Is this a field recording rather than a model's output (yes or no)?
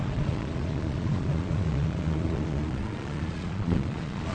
no